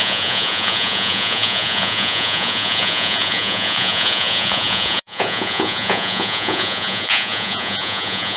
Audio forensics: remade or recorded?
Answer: remade